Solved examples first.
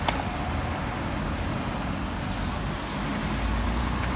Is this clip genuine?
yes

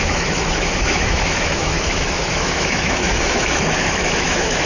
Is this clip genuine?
no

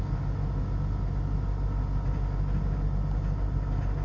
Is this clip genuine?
yes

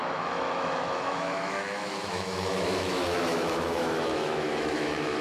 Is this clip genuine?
no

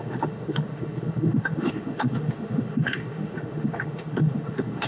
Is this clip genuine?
no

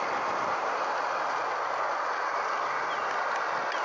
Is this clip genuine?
yes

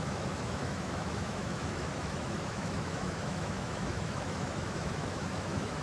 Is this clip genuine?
no